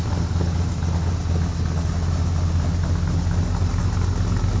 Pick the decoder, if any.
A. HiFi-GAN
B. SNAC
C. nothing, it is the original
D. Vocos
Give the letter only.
C